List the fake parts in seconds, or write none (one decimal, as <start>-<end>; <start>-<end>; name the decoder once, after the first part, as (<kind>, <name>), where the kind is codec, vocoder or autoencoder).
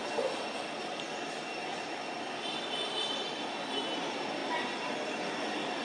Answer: 4.4-5.1 (vocoder, BigVGAN v2)